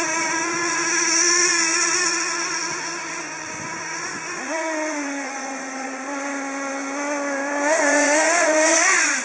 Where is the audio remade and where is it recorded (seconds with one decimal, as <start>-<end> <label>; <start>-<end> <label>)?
0.0-0.8 remade; 0.8-1.5 recorded; 1.5-6.3 remade; 6.3-7.5 recorded; 7.5-9.2 remade